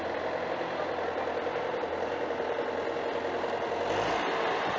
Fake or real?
real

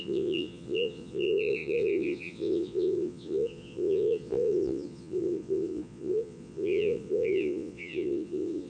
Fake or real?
fake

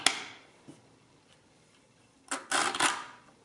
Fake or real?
real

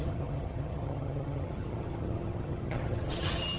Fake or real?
fake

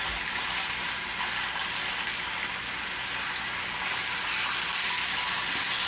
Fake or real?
real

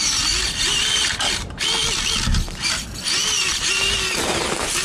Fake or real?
real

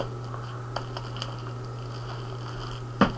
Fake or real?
real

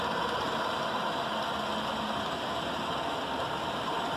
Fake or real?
real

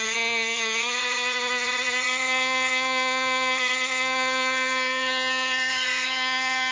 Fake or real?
fake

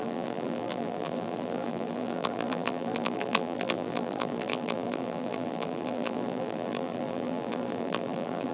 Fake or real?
fake